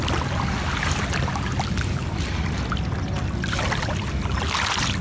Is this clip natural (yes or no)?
yes